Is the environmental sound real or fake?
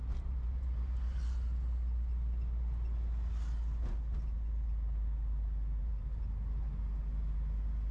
real